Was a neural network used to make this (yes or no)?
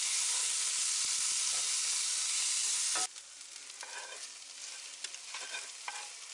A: no